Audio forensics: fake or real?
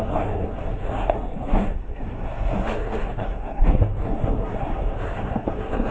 fake